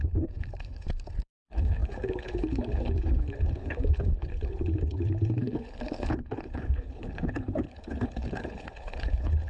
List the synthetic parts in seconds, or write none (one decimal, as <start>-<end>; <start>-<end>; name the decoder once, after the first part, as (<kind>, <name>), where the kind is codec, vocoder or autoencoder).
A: 0.0-9.5 (codec, HILCodec)

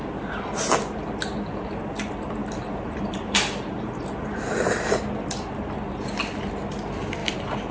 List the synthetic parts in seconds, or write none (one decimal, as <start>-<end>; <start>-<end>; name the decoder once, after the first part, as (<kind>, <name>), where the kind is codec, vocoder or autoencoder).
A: 2.4-5.0 (vocoder, BigVGAN v2); 7.2-7.7

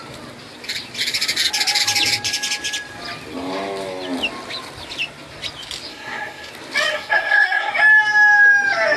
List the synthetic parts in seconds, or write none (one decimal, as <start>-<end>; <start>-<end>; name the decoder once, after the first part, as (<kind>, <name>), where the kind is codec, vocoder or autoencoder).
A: 5.9-6.5 (codec, SNAC); 6.9-7.7